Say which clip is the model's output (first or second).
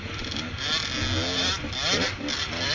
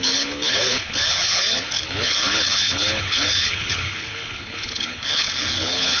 second